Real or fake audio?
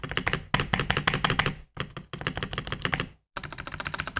real